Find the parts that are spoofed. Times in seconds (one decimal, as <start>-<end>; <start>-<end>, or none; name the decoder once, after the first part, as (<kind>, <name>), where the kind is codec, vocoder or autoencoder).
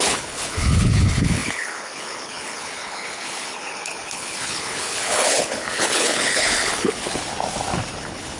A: 0.0-7.2 (codec, HILCodec); 8.0-8.4